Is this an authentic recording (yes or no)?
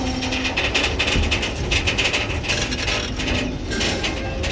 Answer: yes